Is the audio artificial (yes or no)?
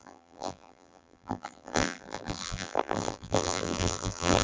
yes